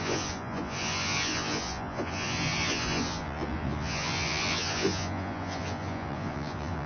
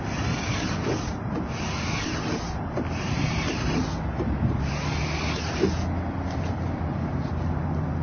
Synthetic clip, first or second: first